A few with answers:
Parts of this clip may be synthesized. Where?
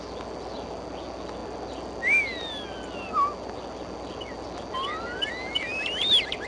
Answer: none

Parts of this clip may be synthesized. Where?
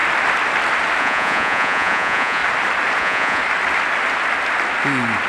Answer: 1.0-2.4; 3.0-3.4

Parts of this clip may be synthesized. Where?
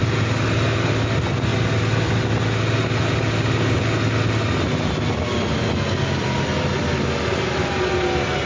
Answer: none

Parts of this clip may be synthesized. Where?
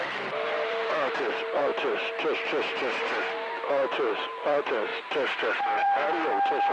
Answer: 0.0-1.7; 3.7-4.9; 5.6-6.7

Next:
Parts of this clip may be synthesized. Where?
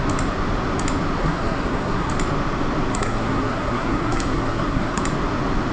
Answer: 1.2-2.1; 2.9-5.0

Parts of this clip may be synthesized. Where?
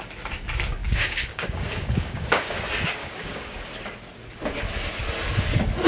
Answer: 0.8-2.6; 3.0-3.7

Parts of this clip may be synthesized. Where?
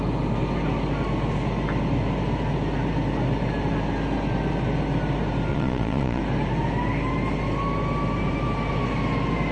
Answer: 5.5-6.2